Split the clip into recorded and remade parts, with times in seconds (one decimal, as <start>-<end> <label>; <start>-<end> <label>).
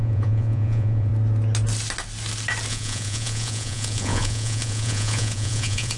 0.0-1.1 remade; 1.1-2.7 recorded; 2.7-6.0 remade